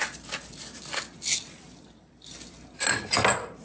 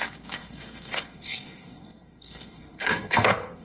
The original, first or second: first